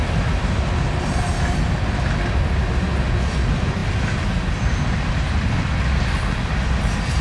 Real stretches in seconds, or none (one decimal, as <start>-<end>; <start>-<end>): 0.0-7.2